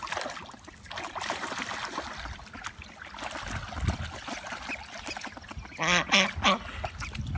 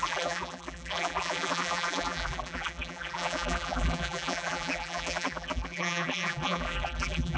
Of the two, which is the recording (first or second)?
first